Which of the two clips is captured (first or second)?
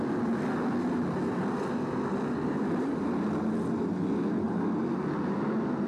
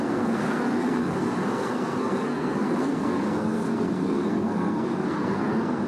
first